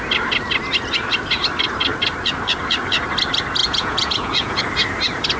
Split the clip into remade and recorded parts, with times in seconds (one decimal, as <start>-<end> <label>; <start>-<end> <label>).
0.0-3.6 recorded; 3.6-4.6 remade; 4.6-5.4 recorded